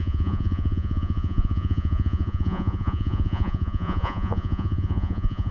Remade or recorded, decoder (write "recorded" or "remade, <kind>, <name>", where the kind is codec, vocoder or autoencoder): remade, vocoder, Vocos